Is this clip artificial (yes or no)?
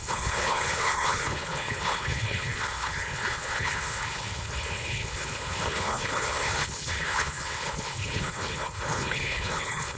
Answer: yes